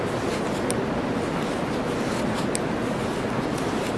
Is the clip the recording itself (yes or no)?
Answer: yes